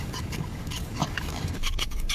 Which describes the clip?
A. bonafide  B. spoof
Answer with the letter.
B